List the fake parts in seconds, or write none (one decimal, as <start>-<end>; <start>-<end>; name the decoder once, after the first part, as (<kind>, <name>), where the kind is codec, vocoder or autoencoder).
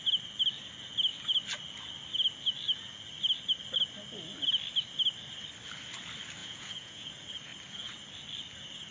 6.4-7.1 (vocoder, Vocos)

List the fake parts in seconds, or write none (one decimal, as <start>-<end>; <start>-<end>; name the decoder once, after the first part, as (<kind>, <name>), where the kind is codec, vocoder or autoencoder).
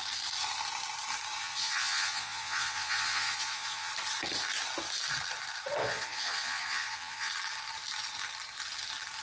1.4-3.9 (vocoder, Vocos); 5.8-7.3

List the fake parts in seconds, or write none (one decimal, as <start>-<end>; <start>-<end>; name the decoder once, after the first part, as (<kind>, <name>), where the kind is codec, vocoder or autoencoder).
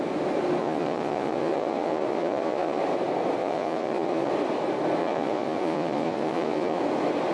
0.6-2.8 (vocoder, Vocos); 3.4-4.3; 5.0-6.8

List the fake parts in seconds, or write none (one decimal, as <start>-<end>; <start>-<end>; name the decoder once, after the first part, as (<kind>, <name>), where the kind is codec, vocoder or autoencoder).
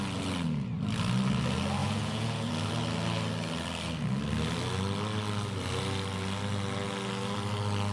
1.8-2.5 (vocoder, Vocos)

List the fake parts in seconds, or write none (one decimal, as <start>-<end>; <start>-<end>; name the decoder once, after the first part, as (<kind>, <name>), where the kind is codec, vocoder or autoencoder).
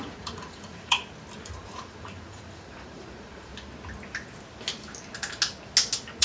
0.0-1.0 (vocoder, Vocos); 1.6-3.5